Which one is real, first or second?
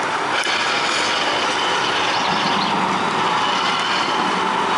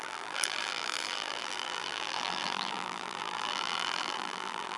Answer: first